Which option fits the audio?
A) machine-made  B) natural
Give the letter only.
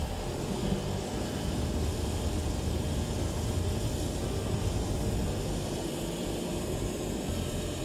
B